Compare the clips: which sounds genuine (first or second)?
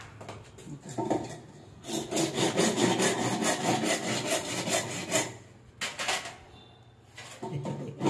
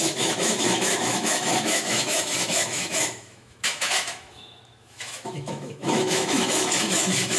first